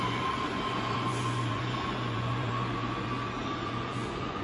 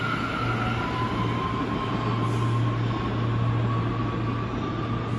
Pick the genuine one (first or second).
second